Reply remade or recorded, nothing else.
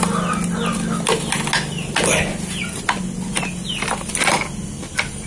recorded